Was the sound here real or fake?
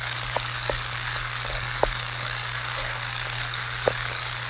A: fake